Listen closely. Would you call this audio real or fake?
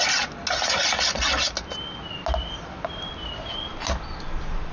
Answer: real